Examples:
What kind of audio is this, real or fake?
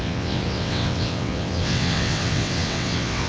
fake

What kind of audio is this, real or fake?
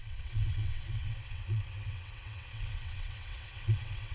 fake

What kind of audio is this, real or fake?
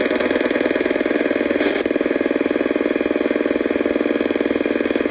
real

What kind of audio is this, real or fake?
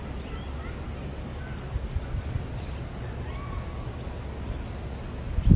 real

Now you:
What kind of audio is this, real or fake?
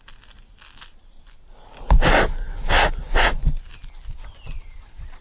real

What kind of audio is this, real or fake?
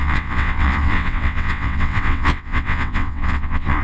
fake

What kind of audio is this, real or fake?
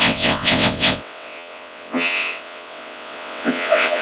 fake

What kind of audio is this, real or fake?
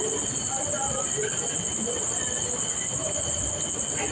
real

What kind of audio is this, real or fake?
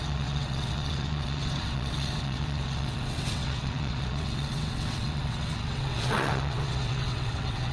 fake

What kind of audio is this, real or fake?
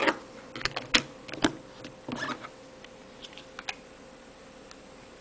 real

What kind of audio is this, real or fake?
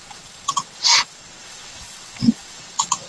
fake